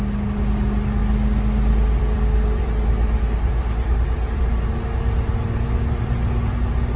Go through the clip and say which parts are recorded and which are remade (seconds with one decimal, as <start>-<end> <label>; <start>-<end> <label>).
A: 0.0-1.0 recorded; 1.0-4.4 remade; 4.4-7.0 recorded